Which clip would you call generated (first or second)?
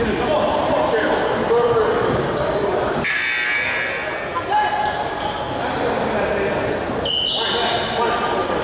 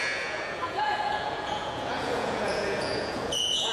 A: second